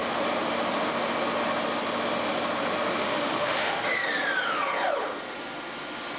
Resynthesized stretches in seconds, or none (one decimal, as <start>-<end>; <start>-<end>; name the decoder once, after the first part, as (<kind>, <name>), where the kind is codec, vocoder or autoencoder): 3.0-3.8 (autoencoder, DAC-VAE)